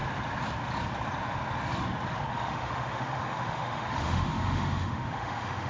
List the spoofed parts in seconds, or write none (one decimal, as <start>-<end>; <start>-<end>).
2.3-5.7